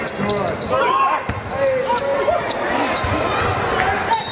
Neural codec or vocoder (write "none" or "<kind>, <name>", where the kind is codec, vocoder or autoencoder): none